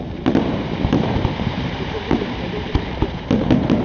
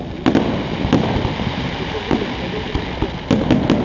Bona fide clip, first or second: second